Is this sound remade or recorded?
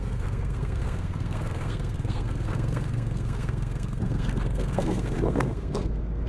remade